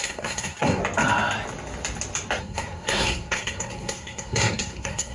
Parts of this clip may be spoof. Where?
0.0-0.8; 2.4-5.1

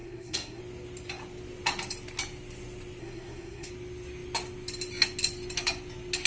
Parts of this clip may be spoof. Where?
0.0-0.6; 3.0-3.7

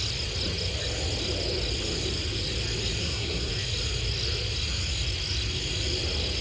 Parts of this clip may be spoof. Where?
3.0-3.5